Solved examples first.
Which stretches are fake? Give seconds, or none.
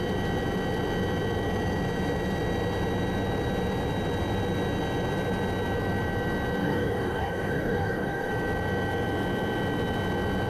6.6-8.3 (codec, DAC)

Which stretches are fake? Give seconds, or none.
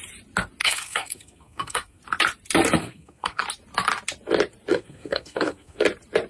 0.6-2.0 (codec, SNAC); 2.8-3.4; 4.7-5.8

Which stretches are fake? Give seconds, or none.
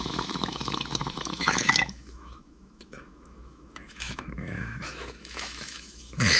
0.0-6.4 (autoencoder, DAC-VAE)